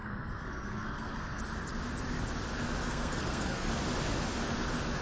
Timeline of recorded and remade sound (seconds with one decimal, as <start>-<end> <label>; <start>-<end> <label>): 0.0-1.4 remade; 1.4-2.8 recorded; 2.8-3.7 remade; 3.7-5.0 recorded